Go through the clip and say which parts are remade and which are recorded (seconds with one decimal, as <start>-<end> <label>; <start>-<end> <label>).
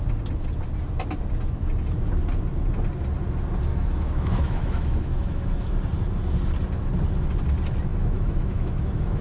0.0-3.7 recorded; 3.7-5.7 remade; 5.7-7.9 recorded; 7.9-9.2 remade